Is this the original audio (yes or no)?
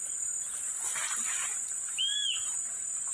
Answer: yes